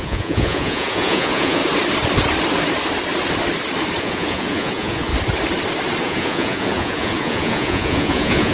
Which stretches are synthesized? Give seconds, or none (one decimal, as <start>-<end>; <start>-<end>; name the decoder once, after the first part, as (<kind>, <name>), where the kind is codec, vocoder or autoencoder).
0.0-1.6 (vocoder, Vocos); 4.0-5.1; 6.0-8.5